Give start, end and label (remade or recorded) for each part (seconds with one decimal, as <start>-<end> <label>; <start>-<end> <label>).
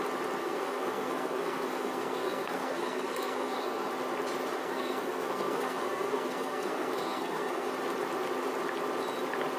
0.0-0.4 recorded; 0.4-3.9 remade; 3.9-4.6 recorded; 4.6-7.7 remade; 7.7-9.6 recorded